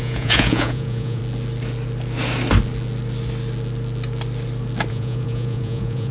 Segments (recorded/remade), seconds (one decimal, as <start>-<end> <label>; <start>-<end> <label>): 0.0-1.2 remade; 1.2-4.9 recorded; 4.9-6.1 remade